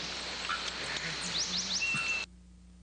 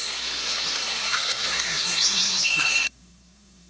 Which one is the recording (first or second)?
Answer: first